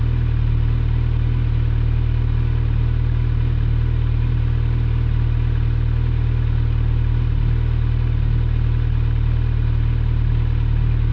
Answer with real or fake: real